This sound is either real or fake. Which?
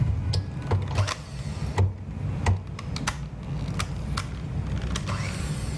real